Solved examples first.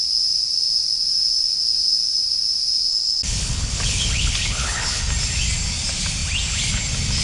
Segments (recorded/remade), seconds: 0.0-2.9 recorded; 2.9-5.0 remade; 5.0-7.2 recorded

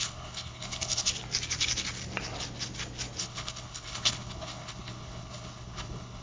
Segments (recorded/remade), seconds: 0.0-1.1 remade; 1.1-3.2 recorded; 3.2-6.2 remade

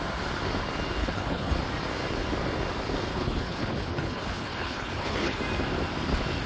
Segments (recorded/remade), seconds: 0.0-1.0 recorded; 1.0-1.5 remade; 1.5-3.1 recorded; 3.1-5.4 remade; 5.4-6.5 recorded